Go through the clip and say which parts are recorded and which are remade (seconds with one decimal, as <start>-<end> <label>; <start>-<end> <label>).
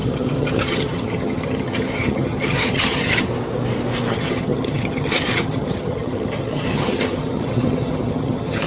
0.0-3.3 remade; 3.3-4.1 recorded; 4.1-8.7 remade